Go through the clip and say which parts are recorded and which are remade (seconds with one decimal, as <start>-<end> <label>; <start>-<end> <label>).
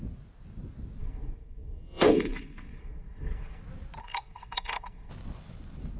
0.0-1.0 recorded; 1.0-3.6 remade; 3.6-4.0 recorded; 4.0-5.1 remade; 5.1-6.0 recorded